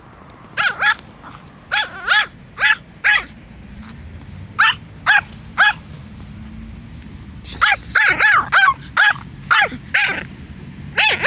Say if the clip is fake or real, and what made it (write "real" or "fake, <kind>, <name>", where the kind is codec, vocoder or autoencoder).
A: real